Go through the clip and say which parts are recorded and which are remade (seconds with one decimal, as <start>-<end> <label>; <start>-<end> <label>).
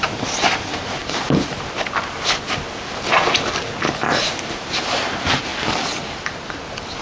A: 0.0-1.0 remade; 1.0-4.3 recorded; 4.3-5.5 remade; 5.5-7.0 recorded